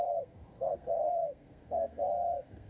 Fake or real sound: fake